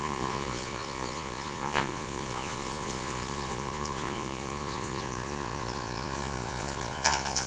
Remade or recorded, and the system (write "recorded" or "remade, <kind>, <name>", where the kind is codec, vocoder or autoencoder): remade, vocoder, Vocos